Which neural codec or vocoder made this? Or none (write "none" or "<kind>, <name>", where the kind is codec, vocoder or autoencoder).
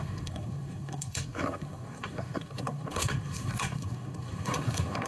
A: codec, SNAC